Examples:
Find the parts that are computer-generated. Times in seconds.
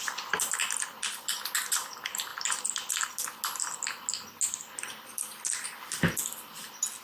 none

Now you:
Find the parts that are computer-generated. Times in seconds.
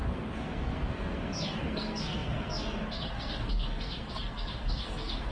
0.0-5.3 (codec, SNAC)